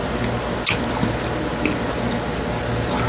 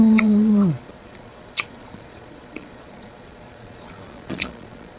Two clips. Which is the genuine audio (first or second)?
first